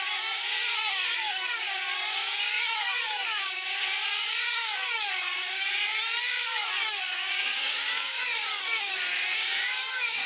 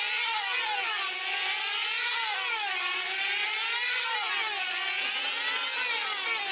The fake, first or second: first